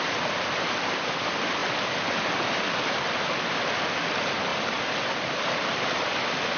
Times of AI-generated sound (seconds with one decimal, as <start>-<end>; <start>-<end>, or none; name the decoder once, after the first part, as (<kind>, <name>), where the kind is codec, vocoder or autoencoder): 0.0-1.6 (vocoder, BigVGAN v2); 3.2-6.6